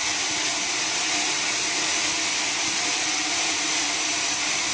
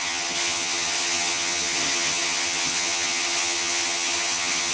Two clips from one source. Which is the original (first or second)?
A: first